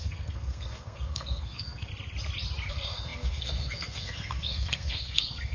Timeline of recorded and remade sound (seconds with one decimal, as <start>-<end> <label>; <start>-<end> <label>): 0.0-1.9 remade; 1.9-2.7 recorded; 2.7-5.5 remade